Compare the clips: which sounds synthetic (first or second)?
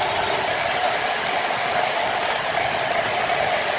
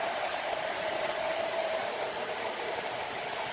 second